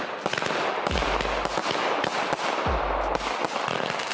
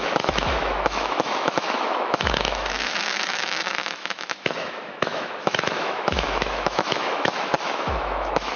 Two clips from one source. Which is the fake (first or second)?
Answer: second